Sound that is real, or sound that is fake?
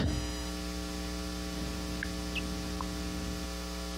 real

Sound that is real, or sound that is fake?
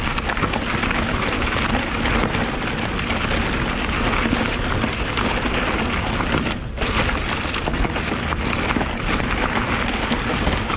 real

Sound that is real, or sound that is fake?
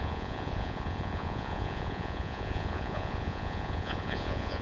fake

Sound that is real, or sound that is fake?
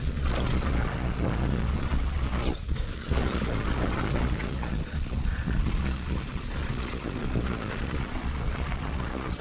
fake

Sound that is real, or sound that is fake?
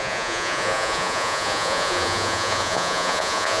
fake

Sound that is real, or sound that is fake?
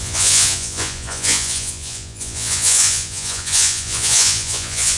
fake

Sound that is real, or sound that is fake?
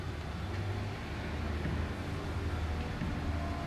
real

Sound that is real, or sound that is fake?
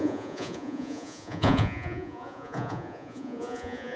fake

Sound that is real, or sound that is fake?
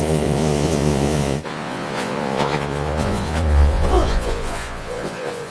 fake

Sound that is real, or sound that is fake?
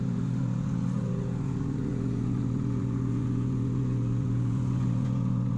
fake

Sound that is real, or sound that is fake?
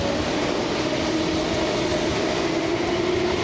real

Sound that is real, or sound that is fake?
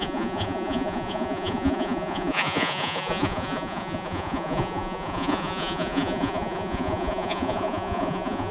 fake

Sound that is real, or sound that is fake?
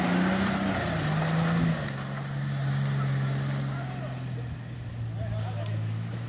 real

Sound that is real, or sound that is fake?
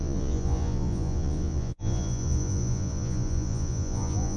fake